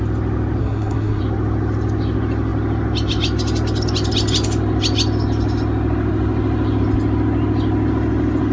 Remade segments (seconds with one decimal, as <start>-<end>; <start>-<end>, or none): 0.6-1.2